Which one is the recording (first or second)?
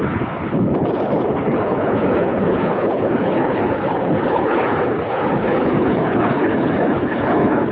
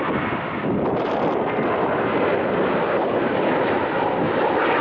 second